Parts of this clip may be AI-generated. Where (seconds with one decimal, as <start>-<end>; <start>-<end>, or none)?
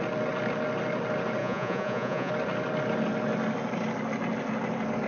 1.4-2.3